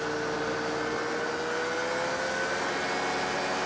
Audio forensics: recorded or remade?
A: recorded